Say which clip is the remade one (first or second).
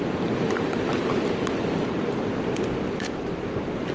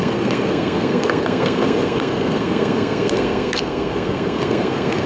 second